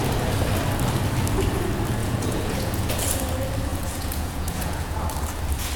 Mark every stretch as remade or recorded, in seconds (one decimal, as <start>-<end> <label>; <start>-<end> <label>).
0.0-2.0 recorded; 2.0-2.9 remade; 2.9-3.7 recorded; 3.7-5.0 remade; 5.0-5.8 recorded